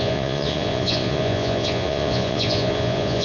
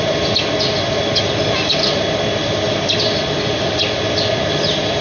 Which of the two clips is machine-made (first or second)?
first